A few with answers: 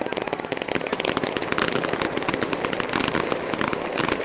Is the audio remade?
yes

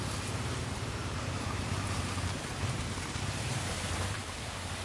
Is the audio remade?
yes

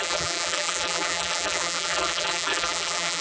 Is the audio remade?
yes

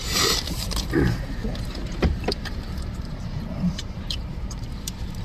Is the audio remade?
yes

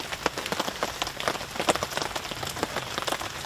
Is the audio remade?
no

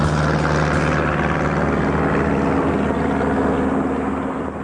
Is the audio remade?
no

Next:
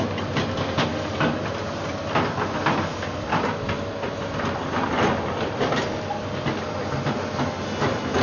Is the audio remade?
no